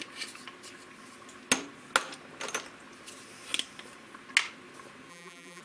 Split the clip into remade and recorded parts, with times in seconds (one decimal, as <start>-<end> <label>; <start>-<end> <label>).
0.0-5.1 recorded; 5.1-5.6 remade